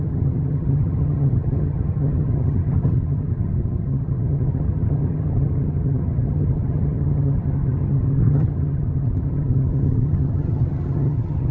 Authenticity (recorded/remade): remade